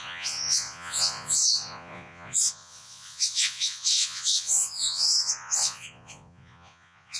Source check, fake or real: fake